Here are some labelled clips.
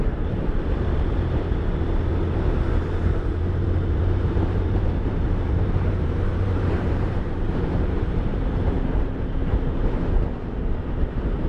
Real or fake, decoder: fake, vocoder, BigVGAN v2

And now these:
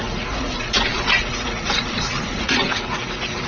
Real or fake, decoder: fake, vocoder, Vocos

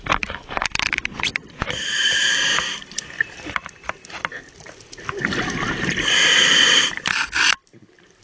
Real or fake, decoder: fake, vocoder, BigVGAN v2